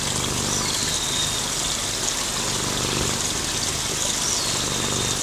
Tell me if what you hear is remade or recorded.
recorded